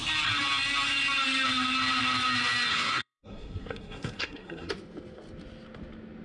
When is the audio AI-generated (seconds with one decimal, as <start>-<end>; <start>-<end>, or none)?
2.7-4.7